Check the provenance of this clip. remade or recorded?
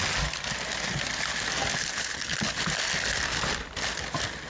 recorded